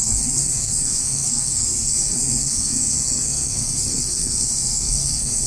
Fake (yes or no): yes